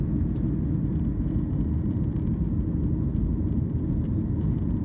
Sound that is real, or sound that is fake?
real